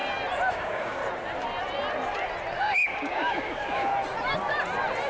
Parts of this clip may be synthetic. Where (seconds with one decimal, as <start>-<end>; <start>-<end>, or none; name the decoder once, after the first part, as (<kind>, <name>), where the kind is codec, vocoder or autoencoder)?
0.5-1.0 (codec, DAC); 2.6-3.9